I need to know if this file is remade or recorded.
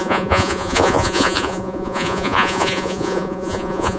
remade